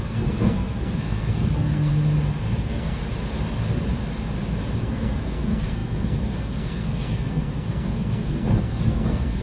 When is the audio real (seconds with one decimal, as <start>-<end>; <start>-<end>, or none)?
1.9-2.4; 3.0-4.8